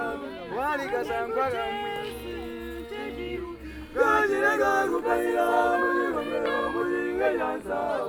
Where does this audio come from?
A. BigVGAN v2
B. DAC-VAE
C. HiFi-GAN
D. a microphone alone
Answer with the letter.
D